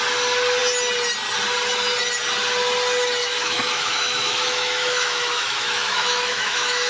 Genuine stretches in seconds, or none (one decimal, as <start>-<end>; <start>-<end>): 0.0-3.2